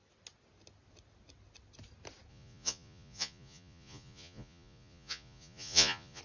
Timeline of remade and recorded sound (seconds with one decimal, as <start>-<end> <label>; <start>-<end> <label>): 0.0-2.3 recorded; 2.3-6.2 remade